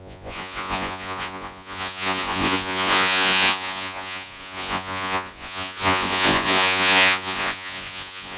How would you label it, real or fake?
fake